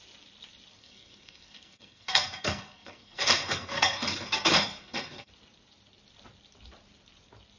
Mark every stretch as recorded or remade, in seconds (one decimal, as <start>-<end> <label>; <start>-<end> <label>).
0.0-0.8 recorded; 0.8-5.3 remade; 5.3-7.6 recorded